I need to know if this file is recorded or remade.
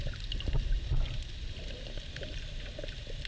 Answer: recorded